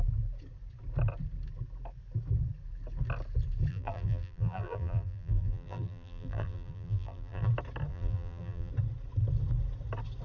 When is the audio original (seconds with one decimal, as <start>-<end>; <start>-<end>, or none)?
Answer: 0.0-3.7; 7.5-7.9; 8.7-10.2